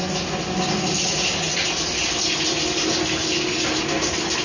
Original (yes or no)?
yes